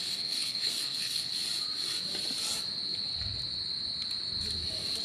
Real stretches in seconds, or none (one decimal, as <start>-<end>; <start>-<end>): 1.3-5.0